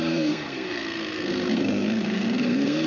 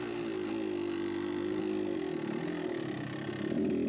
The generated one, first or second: first